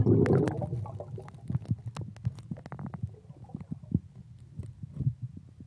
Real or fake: real